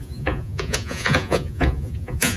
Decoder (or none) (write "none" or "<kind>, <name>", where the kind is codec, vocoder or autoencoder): vocoder, Vocos